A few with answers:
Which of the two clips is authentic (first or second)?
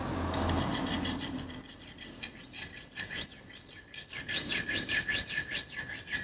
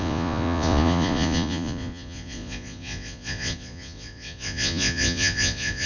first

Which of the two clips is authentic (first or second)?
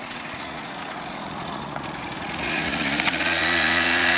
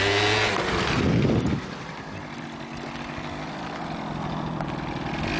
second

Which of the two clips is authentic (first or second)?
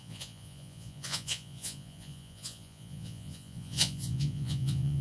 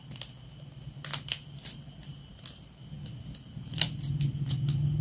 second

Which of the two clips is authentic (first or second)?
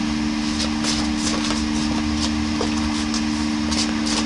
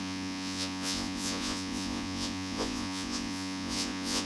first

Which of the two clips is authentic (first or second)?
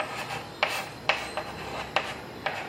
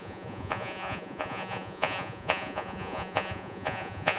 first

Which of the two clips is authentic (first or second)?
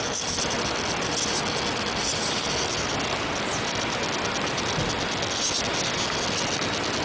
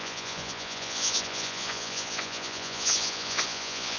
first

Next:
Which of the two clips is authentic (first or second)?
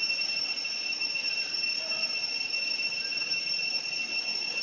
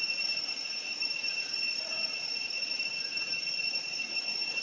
first